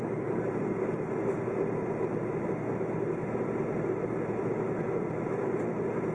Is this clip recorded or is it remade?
recorded